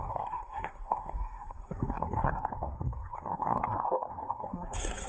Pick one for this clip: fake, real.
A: fake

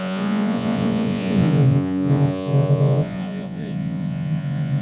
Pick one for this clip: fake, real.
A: fake